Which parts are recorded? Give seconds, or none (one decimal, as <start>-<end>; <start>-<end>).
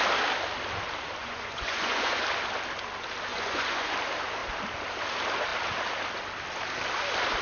0.0-1.2; 2.2-3.3; 3.9-7.4